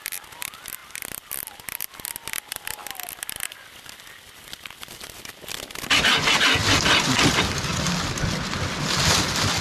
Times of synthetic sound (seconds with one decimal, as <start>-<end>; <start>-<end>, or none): 0.0-0.8; 2.3-2.8; 3.3-6.6; 8.1-9.6